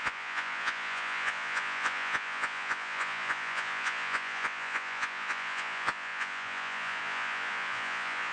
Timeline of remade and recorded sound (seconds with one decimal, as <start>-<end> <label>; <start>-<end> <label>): 0.0-8.3 remade